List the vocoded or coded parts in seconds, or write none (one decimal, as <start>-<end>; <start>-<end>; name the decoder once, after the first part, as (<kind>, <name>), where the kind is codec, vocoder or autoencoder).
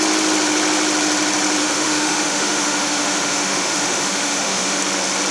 1.6-4.8 (autoencoder, DAC-VAE)